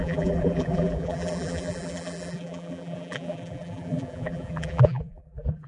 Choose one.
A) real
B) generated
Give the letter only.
B